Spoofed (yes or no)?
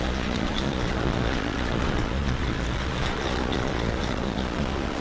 yes